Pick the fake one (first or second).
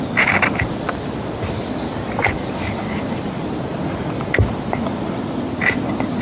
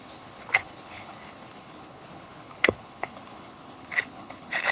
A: second